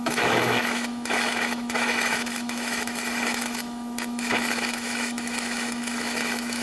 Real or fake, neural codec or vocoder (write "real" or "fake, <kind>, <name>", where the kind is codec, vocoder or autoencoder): fake, autoencoder, DAC-VAE